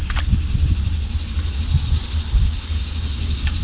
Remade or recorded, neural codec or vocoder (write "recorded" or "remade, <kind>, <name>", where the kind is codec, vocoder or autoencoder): recorded